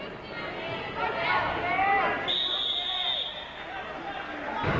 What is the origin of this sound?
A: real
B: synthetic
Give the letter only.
A